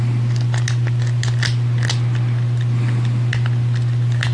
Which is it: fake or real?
real